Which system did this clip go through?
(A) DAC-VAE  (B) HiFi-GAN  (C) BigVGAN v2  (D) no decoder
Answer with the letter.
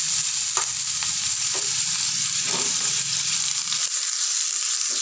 C